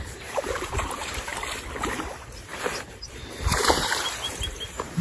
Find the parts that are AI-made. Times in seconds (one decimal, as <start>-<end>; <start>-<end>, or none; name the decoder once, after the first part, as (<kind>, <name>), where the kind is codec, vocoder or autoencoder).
0.0-1.3 (vocoder, BigVGAN v2); 2.0-5.0